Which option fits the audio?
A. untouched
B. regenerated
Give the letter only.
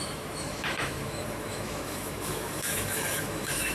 B